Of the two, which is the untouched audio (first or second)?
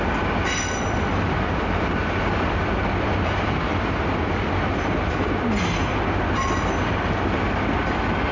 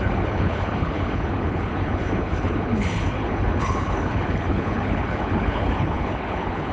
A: first